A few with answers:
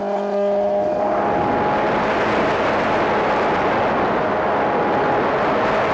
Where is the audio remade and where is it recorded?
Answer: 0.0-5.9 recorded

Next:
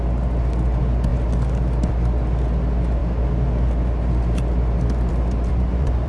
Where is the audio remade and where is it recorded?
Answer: 0.0-5.5 recorded; 5.5-6.1 remade

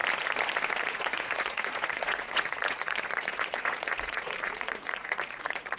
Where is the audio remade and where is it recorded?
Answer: 0.0-0.8 recorded; 0.8-5.8 remade

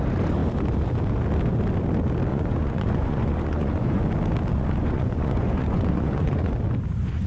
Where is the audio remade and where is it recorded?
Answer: 0.0-2.3 recorded; 2.3-4.0 remade; 4.0-4.5 recorded; 4.5-6.5 remade; 6.5-7.3 recorded

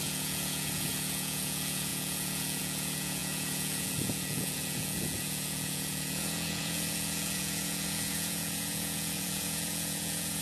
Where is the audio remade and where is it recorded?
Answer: 0.0-10.4 remade

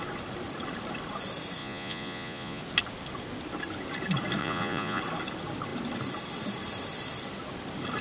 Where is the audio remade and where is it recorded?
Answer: 0.0-1.6 recorded; 1.6-2.6 remade; 2.6-4.4 recorded; 4.4-5.0 remade; 5.0-8.0 recorded

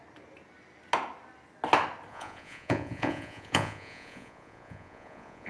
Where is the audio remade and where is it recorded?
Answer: 0.0-2.1 recorded; 2.1-5.5 remade